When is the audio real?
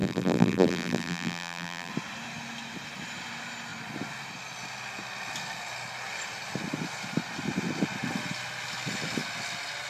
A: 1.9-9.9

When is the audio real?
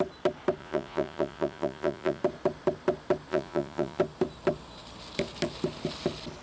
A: 0.0-0.6; 2.2-3.3; 4.0-6.4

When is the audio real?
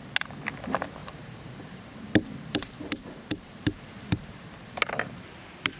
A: 0.0-1.0; 4.5-5.8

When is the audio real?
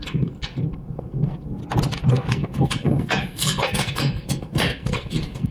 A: 1.6-2.1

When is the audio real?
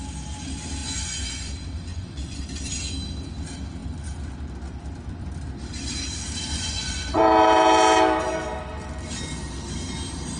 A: 0.0-0.8; 1.4-1.9; 2.4-6.5; 7.2-10.4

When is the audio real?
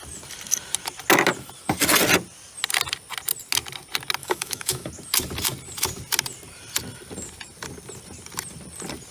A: 0.0-4.2; 4.9-9.1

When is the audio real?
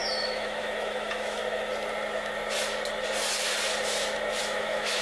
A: 1.4-4.4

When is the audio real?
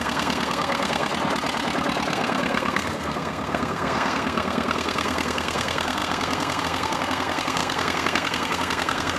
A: 1.1-2.1